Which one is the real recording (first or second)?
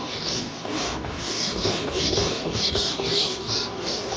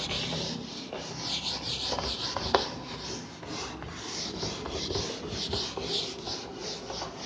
second